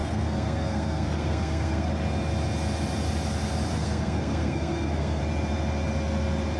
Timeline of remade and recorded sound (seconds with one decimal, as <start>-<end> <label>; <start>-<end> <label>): 0.0-1.9 remade; 1.9-3.7 recorded; 3.7-5.2 remade; 5.2-6.6 recorded